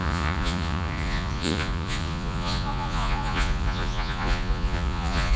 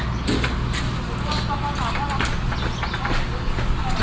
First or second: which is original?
second